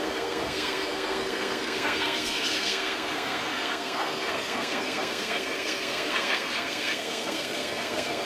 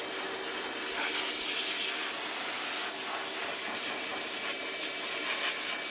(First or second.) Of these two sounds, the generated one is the first